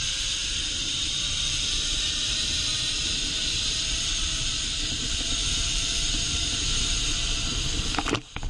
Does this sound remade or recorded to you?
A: remade